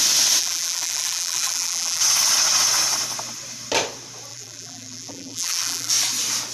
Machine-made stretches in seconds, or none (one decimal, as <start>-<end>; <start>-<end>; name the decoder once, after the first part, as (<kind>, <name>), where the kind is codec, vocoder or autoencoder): 0.4-2.0 (vocoder, BigVGAN v2); 4.3-5.9